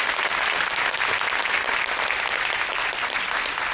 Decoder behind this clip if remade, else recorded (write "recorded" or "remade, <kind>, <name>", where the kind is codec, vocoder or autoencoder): recorded